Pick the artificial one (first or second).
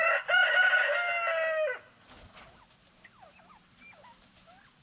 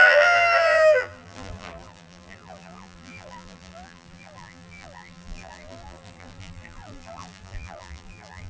second